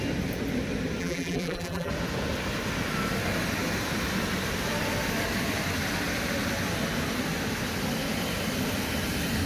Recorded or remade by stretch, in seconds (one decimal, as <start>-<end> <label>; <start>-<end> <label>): 0.0-1.0 recorded; 1.0-1.9 remade; 1.9-9.5 recorded